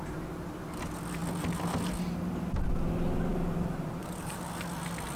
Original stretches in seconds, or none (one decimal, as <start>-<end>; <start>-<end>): 0.0-3.3; 4.4-5.2